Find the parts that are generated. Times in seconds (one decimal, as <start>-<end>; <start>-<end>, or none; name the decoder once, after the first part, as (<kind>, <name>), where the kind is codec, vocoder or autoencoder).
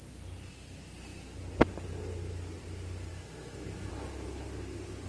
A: 3.1-3.9 (autoencoder, DAC-VAE)